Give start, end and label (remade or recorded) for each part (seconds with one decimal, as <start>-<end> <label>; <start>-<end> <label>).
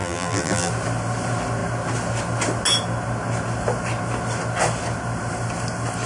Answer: 0.0-0.7 remade; 0.7-6.1 recorded